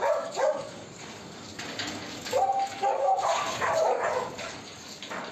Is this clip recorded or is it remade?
remade